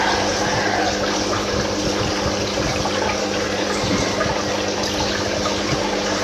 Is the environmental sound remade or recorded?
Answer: recorded